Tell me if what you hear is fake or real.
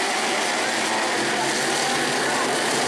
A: real